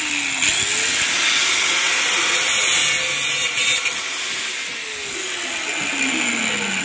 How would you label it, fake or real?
real